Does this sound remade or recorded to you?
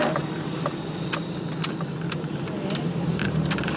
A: recorded